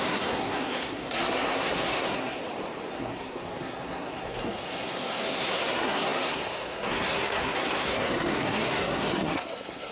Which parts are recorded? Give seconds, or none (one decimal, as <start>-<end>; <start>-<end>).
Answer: 2.4-2.9